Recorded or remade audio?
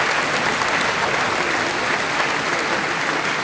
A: recorded